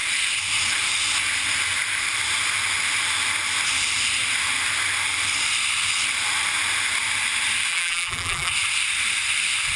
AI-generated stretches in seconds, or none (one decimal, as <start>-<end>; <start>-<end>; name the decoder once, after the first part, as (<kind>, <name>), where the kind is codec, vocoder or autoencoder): 7.7-8.5 (vocoder, BigVGAN v2)